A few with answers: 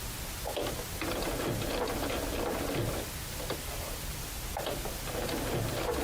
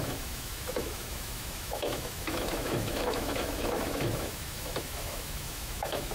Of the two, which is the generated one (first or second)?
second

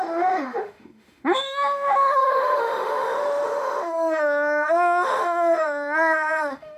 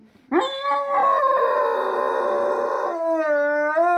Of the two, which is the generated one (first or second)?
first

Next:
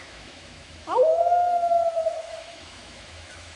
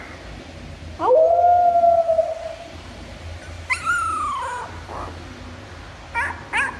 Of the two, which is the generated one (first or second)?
first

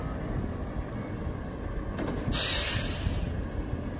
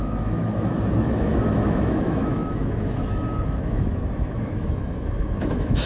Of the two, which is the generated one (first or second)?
second